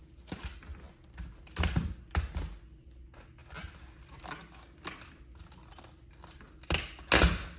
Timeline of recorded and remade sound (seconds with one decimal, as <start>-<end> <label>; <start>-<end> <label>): 0.0-7.6 recorded